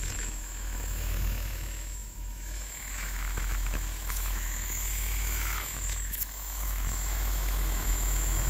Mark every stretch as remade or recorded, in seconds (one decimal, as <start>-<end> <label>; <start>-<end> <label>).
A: 0.0-8.5 remade